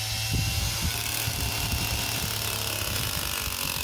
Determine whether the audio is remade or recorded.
recorded